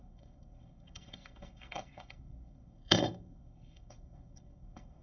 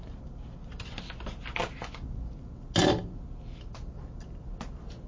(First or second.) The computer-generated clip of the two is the first